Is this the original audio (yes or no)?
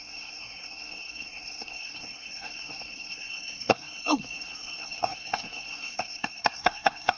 no